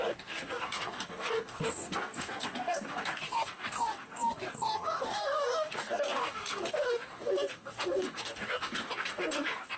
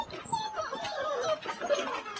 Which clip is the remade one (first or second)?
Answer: first